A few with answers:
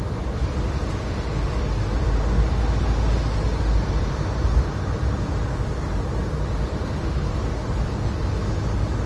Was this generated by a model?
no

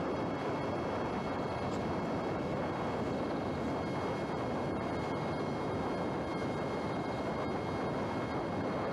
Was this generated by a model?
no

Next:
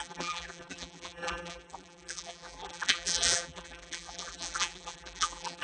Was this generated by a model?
yes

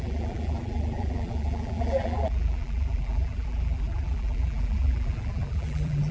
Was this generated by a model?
yes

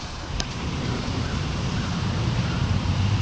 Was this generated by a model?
yes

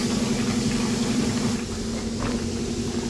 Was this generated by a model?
no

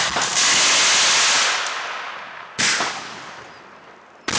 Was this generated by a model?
no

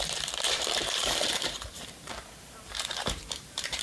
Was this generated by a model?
yes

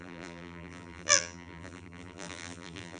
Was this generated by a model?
yes